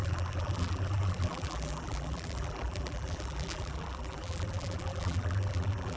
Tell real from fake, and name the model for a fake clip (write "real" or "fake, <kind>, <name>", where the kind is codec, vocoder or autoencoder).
fake, vocoder, BigVGAN v2